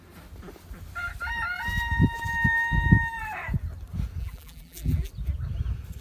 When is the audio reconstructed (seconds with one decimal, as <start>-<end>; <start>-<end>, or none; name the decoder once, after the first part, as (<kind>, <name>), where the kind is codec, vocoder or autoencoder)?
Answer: 4.2-5.1 (vocoder, BigVGAN v2)